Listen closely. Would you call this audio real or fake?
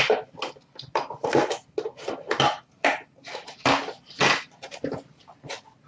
real